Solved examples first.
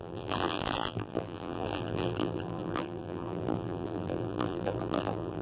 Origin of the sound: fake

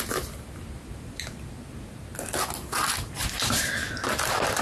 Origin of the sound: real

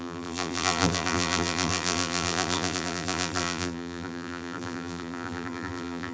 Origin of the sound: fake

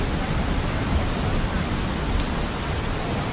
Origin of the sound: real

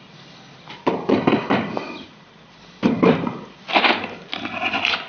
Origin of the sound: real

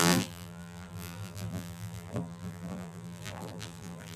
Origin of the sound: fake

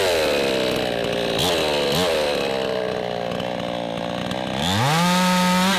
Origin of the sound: real